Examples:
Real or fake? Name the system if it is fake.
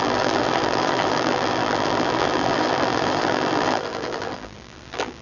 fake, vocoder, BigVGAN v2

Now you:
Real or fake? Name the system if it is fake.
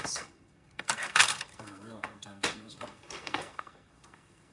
fake, codec, SNAC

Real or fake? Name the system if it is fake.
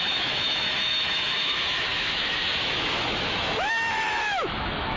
fake, autoencoder, DAC-VAE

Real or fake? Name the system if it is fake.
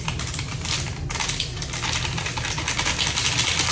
real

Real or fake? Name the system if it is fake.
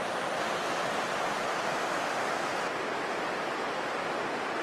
real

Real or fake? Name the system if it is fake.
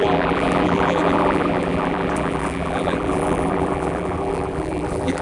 fake, vocoder, BigVGAN v2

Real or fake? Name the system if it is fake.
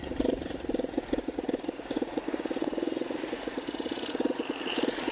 fake, vocoder, Vocos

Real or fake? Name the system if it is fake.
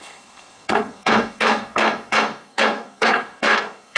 fake, codec, SNAC